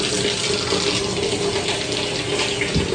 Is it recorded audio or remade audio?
recorded